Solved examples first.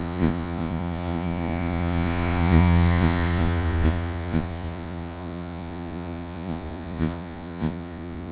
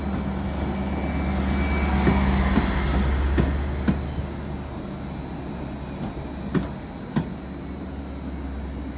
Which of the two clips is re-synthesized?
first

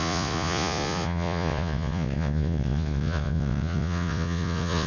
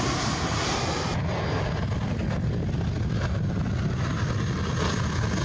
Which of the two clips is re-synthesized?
first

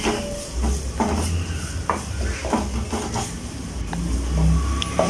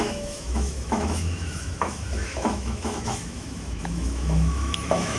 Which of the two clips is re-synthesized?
second